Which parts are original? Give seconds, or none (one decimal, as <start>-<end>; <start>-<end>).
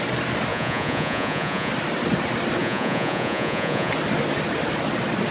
0.0-0.5; 1.7-2.6; 3.9-5.3